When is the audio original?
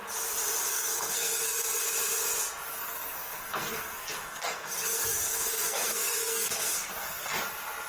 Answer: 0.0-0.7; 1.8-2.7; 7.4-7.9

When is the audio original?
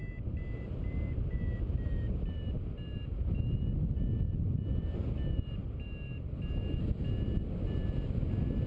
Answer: 0.0-8.7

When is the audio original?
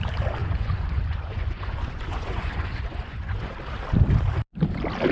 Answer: 0.0-0.4; 3.5-5.1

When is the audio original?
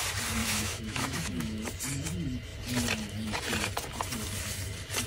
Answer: 0.0-0.4; 1.6-5.1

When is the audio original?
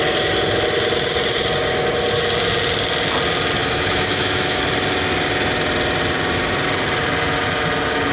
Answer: 0.0-3.6; 4.6-8.1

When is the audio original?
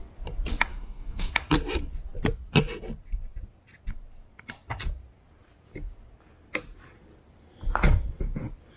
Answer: 0.0-0.7; 1.3-8.8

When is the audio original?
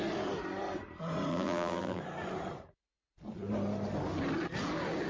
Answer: 0.0-1.3; 2.0-5.1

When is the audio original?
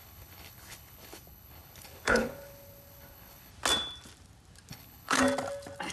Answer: 3.5-4.7; 5.2-5.9